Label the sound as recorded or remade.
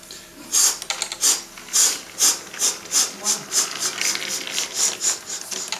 recorded